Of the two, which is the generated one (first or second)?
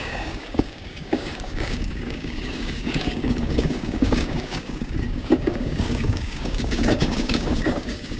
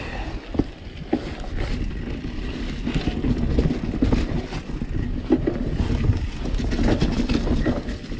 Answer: first